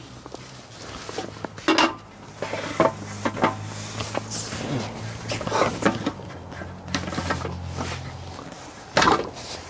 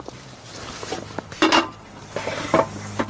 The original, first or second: first